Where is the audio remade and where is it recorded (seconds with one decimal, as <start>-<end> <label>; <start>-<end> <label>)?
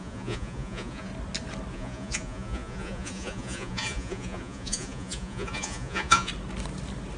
0.0-1.1 remade; 1.1-1.7 recorded; 1.7-6.3 remade; 6.3-7.2 recorded